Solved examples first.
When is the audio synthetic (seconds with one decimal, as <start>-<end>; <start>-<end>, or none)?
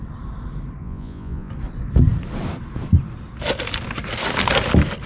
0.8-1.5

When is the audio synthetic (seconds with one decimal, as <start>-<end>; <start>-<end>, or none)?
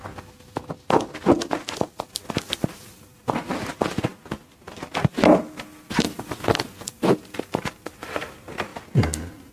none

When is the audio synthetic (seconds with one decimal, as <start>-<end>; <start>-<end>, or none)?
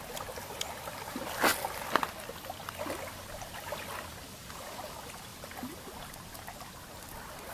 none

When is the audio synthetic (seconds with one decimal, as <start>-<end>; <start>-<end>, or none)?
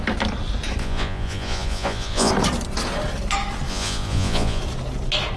0.8-2.3; 3.7-4.6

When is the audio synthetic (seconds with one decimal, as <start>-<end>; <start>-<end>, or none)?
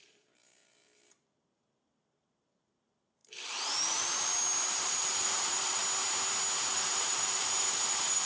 0.0-5.8; 6.7-8.3